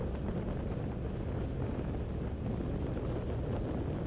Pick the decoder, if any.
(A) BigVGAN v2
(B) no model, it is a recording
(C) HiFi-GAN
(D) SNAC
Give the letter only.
B